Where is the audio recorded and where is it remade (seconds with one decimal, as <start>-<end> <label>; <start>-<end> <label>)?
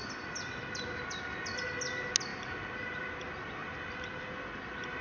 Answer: 0.0-5.0 recorded